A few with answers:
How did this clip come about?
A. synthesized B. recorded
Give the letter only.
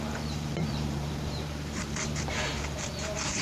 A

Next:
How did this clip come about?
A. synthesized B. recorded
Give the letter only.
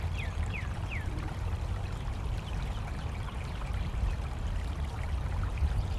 A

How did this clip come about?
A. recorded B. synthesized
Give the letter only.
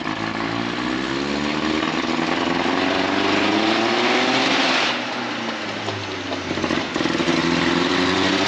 A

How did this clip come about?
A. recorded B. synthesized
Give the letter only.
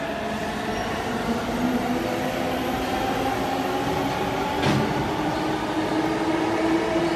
A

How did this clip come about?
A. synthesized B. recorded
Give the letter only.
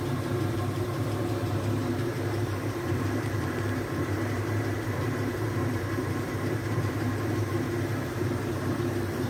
A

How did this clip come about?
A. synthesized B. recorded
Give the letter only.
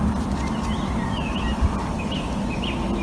A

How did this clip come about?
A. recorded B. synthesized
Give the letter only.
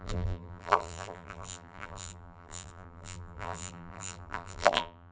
B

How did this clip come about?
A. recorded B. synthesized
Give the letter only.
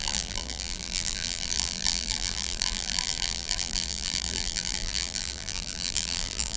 B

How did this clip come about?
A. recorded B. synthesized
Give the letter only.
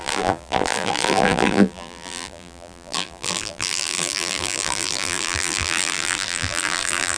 B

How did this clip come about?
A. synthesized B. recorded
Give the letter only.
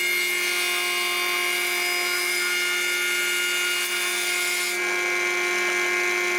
B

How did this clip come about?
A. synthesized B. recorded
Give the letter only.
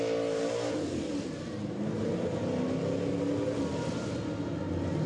B